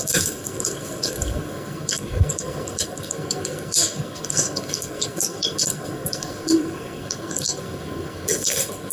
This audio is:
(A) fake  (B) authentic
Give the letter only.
A